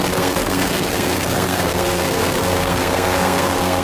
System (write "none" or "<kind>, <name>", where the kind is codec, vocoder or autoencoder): codec, SNAC